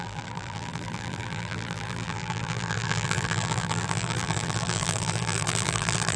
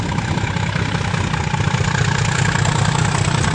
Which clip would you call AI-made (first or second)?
first